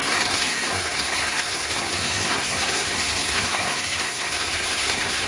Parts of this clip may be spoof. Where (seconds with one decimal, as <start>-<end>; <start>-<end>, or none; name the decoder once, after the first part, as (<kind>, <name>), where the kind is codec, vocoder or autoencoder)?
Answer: 0.0-5.3 (codec, SNAC)